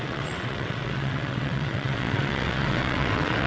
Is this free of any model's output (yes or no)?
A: no